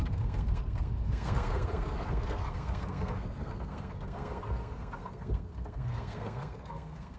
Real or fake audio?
fake